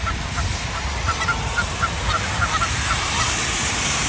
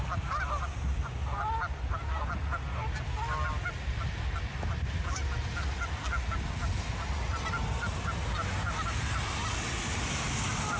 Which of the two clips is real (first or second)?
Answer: second